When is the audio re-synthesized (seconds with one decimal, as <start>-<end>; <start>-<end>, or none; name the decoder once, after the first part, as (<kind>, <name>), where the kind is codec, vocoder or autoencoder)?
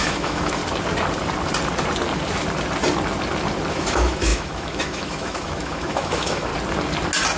0.0-0.6 (autoencoder, DAC-VAE); 3.7-6.5